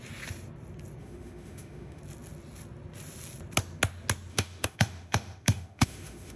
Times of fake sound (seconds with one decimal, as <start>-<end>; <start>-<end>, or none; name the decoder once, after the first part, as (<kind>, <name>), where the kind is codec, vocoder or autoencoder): 1.0-2.0 (autoencoder, DAC-VAE); 4.3-6.4